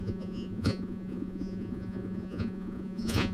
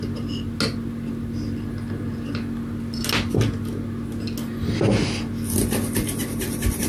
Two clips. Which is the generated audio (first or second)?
first